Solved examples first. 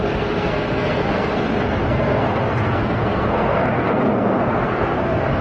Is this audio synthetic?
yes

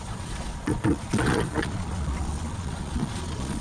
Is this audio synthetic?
yes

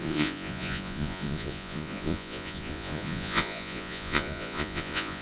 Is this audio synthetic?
yes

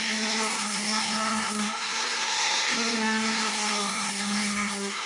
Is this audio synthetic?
yes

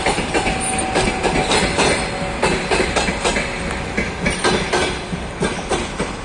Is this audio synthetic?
no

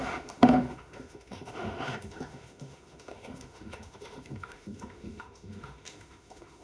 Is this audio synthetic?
yes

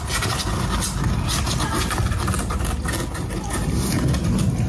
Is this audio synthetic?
no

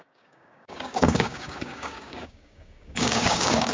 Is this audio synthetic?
yes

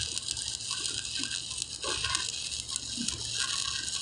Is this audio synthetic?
no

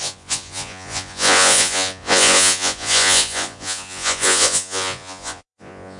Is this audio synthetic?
yes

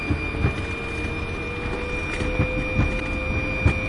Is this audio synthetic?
no